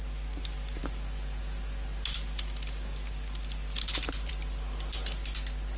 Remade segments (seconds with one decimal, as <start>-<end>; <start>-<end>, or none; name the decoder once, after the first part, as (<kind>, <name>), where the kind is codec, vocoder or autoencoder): none